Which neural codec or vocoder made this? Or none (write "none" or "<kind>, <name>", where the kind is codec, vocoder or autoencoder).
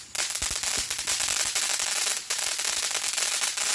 none